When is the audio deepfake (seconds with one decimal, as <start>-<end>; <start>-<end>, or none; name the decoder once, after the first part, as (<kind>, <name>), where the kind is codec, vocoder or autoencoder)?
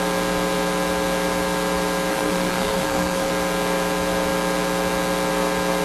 2.1-3.3 (codec, SNAC)